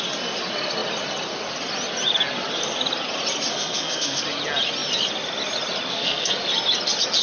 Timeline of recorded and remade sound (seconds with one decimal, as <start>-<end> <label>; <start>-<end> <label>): 0.0-3.5 recorded; 3.5-4.2 remade; 4.2-5.9 recorded; 5.9-6.4 remade; 6.4-7.2 recorded